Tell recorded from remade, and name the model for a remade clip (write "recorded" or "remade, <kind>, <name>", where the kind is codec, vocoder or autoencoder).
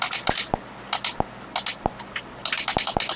recorded